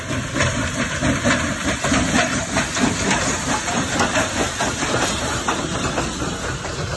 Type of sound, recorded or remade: recorded